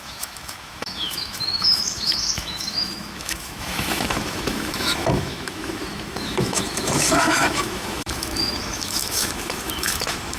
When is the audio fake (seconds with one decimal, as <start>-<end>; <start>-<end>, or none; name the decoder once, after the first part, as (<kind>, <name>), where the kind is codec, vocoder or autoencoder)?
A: 0.0-10.4 (autoencoder, DAC-VAE)